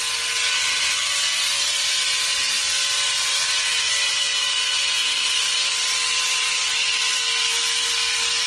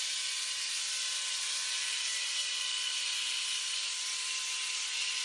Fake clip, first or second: second